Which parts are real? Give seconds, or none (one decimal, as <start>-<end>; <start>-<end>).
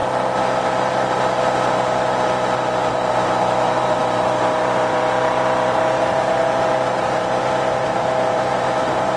0.0-2.9